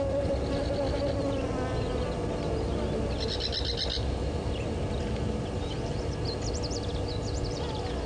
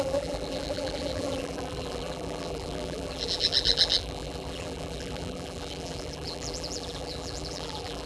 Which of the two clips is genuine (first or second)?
first